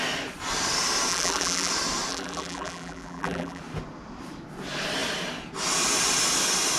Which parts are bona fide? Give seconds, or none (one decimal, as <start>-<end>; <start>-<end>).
0.0-1.1; 1.7-2.1; 3.6-6.8